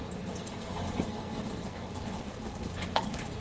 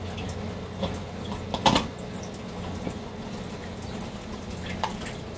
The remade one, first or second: first